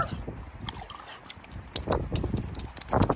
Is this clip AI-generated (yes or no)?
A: no